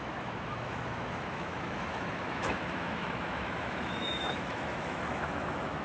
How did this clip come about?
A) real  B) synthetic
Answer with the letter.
B